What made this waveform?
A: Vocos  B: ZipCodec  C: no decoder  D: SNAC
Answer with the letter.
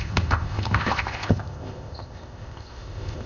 B